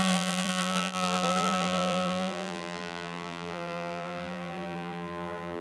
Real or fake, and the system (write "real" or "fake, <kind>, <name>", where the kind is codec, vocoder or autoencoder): fake, vocoder, BigVGAN v2